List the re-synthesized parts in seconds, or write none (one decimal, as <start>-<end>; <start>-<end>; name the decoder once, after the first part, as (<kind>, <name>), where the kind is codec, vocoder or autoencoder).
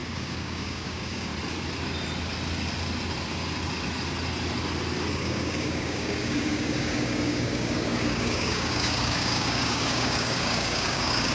0.0-1.3 (codec, DAC); 5.1-11.3